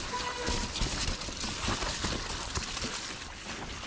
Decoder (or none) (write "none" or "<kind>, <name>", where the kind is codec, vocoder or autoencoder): none